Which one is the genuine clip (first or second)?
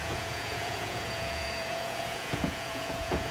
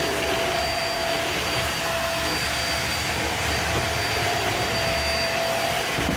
second